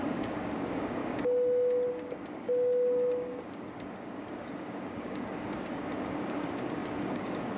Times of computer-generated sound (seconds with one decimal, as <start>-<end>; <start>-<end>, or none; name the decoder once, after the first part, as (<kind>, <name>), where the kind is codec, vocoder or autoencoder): 0.0-1.0 (codec, DAC); 1.9-7.6

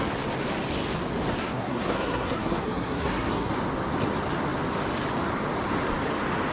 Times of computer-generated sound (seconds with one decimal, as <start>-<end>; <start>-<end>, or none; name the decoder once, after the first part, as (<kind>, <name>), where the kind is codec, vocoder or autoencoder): 1.4-3.5 (codec, SNAC)